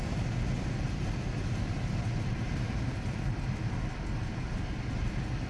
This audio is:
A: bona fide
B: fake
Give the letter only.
A